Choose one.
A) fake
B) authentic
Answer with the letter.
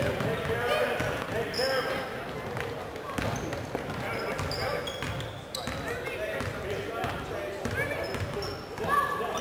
B